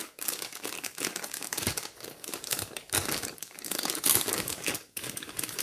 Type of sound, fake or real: fake